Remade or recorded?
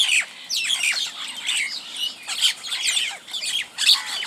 recorded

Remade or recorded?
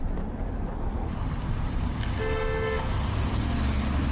recorded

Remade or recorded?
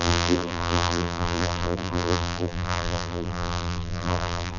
remade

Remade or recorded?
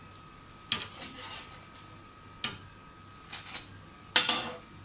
recorded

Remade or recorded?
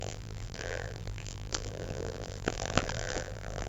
remade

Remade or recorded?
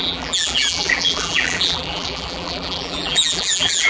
remade